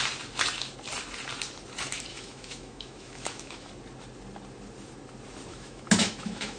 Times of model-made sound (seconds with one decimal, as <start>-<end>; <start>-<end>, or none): 2.1-3.7; 5.5-6.6